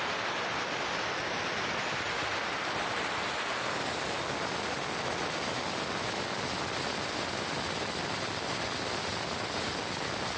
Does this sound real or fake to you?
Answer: real